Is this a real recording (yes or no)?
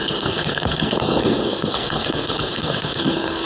no